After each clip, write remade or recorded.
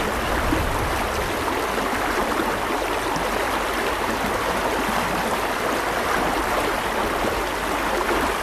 recorded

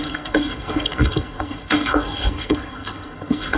remade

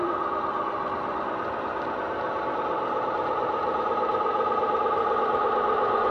remade